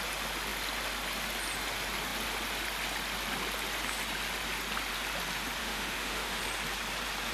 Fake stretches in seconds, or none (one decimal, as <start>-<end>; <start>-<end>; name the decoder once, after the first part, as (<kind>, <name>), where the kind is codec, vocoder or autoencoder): 5.6-6.4 (autoencoder, DAC-VAE)